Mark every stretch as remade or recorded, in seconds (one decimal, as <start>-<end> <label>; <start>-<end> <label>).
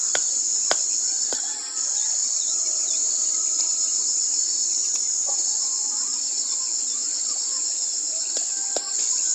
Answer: 0.0-2.2 recorded; 2.2-5.9 remade; 5.9-7.6 recorded; 7.6-8.2 remade; 8.2-9.3 recorded